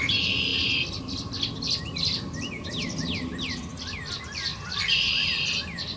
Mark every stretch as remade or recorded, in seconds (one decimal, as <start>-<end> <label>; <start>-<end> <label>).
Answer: 0.0-6.0 recorded